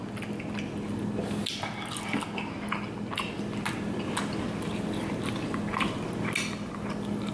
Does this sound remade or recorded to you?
recorded